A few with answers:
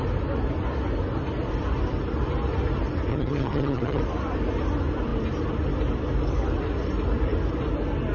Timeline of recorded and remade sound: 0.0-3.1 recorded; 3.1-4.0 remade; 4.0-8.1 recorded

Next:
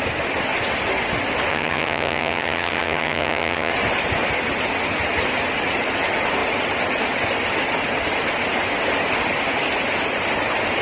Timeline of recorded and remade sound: 0.0-1.5 recorded; 1.5-3.7 remade; 3.7-10.8 recorded

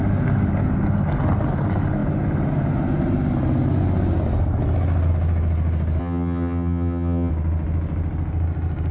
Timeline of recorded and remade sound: 0.0-6.0 recorded; 6.0-7.3 remade; 7.3-8.9 recorded

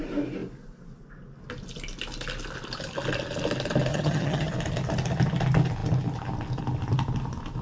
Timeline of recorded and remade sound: 0.0-3.9 recorded; 3.9-4.5 remade; 4.5-7.6 recorded

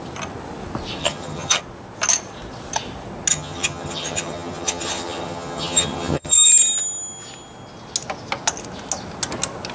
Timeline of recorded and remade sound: 0.0-1.0 recorded; 1.0-1.6 remade; 1.6-3.3 recorded; 3.3-6.5 remade; 6.5-9.7 recorded

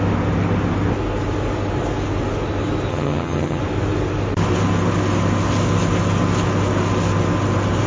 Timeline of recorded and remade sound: 0.0-2.9 recorded; 2.9-3.6 remade; 3.6-7.9 recorded

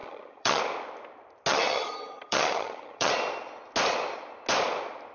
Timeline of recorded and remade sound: 0.0-0.6 remade; 0.6-1.5 recorded; 1.5-3.1 remade; 3.1-5.1 recorded

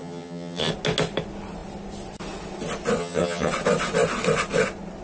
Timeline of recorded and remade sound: 0.0-0.7 remade; 0.7-3.0 recorded; 3.0-3.5 remade; 3.5-5.0 recorded